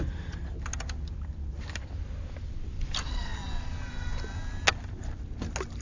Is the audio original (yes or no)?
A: yes